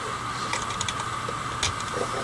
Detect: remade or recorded recorded